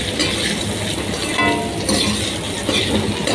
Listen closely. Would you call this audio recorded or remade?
recorded